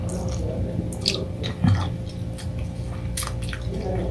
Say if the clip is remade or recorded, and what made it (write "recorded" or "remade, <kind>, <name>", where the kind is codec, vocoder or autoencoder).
recorded